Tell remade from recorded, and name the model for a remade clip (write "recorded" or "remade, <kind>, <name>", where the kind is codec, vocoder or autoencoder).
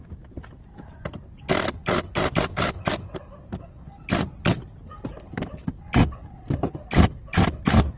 recorded